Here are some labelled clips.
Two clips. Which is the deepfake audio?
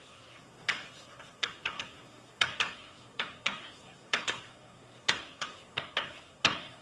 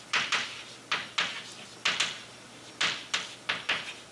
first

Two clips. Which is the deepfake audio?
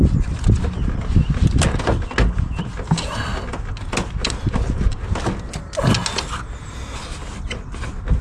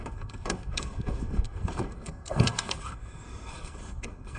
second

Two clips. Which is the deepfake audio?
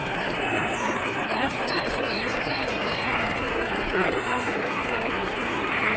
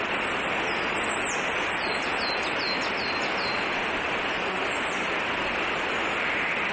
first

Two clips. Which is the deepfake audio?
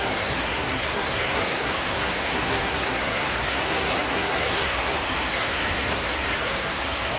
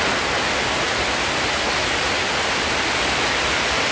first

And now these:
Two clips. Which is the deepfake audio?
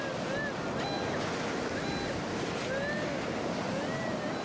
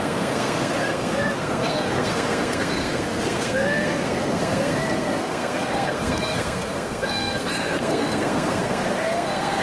second